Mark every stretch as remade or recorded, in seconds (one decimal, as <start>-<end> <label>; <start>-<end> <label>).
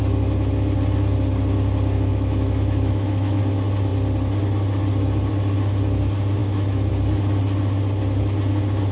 0.0-2.1 recorded; 2.1-3.4 remade; 3.4-6.4 recorded; 6.4-6.9 remade; 6.9-8.9 recorded